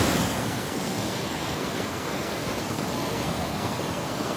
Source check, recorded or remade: remade